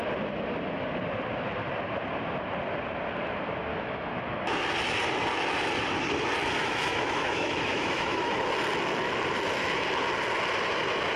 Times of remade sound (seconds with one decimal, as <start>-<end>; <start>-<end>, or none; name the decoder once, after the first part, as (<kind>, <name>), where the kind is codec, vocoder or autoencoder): 3.7-4.5 (autoencoder, DAC-VAE); 6.6-8.3

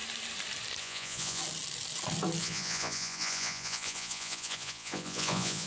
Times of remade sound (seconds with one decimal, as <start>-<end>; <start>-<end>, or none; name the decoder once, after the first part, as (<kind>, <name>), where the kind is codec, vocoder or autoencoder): 0.8-1.4 (vocoder, Vocos); 2.4-5.7

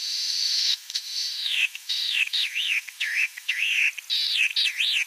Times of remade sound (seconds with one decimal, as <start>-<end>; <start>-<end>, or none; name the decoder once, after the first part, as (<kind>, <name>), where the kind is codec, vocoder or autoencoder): 0.0-3.8 (autoencoder, DAC-VAE)